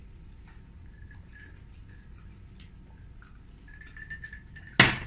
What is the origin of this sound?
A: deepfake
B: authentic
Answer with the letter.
B